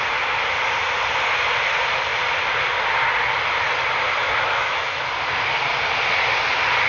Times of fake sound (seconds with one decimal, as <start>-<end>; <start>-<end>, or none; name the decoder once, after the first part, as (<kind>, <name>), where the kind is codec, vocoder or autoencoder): 4.2-5.1 (autoencoder, DAC-VAE)